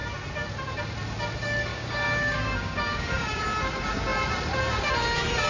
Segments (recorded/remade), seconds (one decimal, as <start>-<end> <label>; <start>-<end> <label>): 0.0-1.7 recorded; 1.7-3.4 remade; 3.4-5.5 recorded